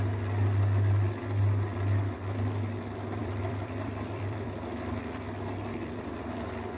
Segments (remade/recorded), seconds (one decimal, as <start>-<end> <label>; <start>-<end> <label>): 0.0-3.2 recorded; 3.2-4.5 remade; 4.5-6.8 recorded